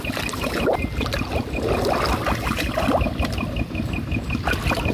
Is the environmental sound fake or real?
real